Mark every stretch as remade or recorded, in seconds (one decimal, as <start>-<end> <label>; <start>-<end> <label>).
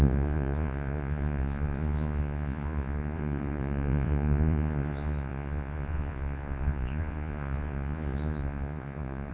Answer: 0.0-9.3 remade